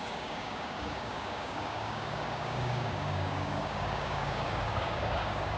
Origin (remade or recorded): remade